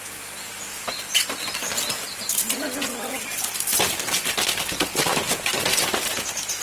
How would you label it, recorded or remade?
recorded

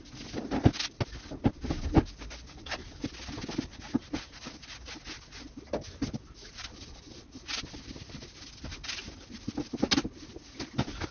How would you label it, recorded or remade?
recorded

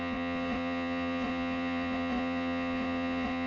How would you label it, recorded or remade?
remade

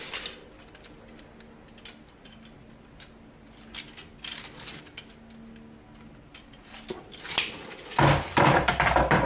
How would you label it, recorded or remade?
recorded